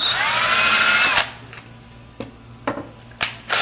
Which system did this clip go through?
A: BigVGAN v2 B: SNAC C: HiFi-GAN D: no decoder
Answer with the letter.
D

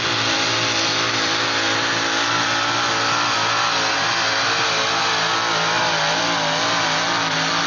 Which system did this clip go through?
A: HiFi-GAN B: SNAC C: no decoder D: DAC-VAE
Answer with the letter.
C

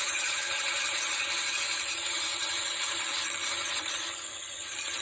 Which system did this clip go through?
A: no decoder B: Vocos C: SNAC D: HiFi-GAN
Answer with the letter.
D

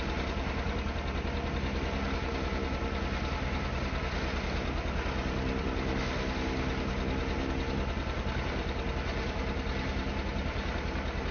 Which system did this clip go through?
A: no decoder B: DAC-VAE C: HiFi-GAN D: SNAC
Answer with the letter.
A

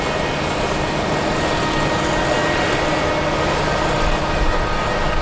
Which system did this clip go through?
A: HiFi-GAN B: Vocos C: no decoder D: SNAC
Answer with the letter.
C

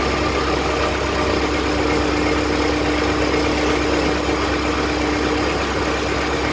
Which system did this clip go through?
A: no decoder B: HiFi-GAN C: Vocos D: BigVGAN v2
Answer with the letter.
A